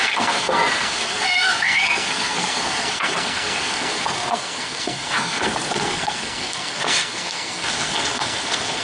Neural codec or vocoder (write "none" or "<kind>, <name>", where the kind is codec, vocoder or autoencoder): codec, SNAC